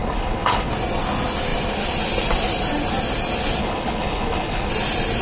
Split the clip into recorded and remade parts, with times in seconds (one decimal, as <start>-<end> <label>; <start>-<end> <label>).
0.0-0.7 remade; 0.7-3.6 recorded; 3.6-4.7 remade; 4.7-5.2 recorded